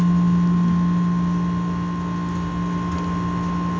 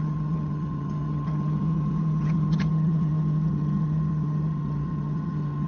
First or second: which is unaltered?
first